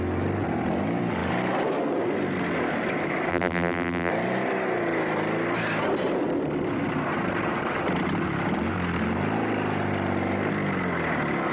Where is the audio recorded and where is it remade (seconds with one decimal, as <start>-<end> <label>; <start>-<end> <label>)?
0.0-3.3 recorded; 3.3-4.1 remade; 4.1-11.5 recorded